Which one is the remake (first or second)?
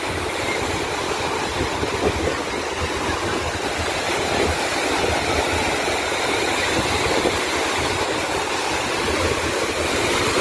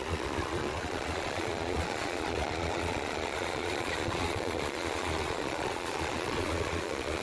second